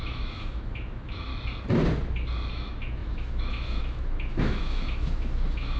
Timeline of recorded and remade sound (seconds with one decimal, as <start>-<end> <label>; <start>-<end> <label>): 0.0-1.3 remade; 1.3-2.5 recorded; 2.5-5.8 remade